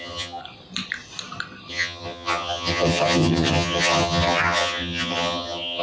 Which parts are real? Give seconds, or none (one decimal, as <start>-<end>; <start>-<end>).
0.4-1.7